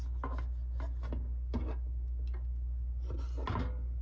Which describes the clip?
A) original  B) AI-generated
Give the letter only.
A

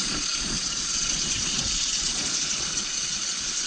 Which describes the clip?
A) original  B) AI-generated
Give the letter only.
B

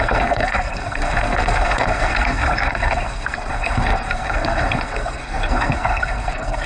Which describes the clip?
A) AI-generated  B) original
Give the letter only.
A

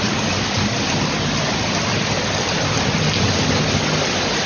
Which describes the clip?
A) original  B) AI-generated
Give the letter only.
A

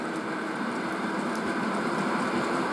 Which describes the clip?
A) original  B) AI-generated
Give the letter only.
A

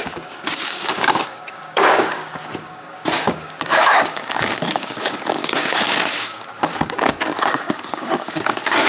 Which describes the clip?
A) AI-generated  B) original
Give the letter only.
A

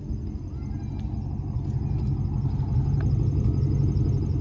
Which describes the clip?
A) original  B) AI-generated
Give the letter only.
A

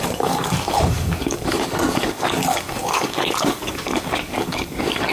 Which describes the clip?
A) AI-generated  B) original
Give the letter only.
A